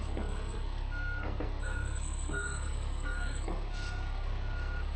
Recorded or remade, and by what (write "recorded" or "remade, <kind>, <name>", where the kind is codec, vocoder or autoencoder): remade, codec, SNAC